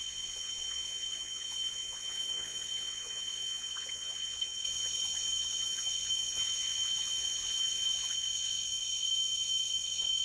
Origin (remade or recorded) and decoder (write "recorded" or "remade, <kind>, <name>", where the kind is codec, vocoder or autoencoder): remade, vocoder, WaveNeXt